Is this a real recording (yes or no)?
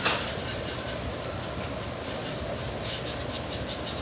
yes